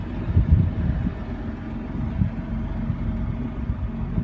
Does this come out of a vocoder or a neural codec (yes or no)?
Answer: no